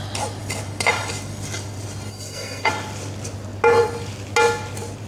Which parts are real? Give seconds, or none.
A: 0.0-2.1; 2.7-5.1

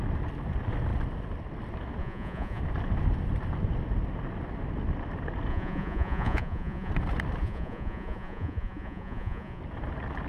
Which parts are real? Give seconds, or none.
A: 0.0-2.0; 2.6-5.5; 6.9-7.4; 9.6-10.3

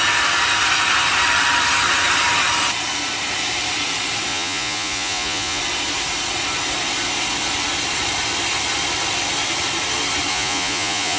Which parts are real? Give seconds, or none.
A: 0.0-4.3; 5.6-10.3

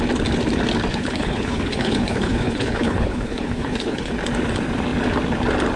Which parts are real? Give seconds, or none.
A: 0.0-0.9; 4.1-5.8